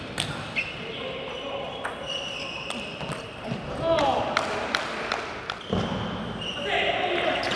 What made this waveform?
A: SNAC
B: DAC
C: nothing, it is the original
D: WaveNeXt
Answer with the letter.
C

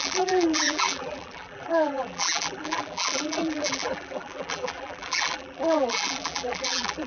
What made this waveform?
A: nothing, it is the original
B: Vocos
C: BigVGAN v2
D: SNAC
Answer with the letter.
C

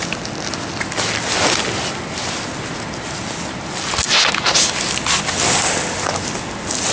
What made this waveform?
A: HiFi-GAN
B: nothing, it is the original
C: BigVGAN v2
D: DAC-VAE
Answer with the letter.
B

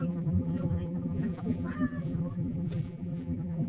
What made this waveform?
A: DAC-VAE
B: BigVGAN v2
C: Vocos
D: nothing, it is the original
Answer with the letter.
B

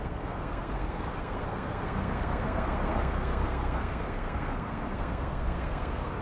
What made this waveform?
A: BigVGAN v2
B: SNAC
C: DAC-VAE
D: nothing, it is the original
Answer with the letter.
B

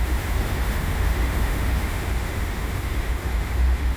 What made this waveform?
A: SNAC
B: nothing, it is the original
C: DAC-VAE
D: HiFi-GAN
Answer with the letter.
C